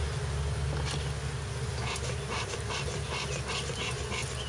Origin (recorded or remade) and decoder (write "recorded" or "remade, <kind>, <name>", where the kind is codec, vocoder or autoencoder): recorded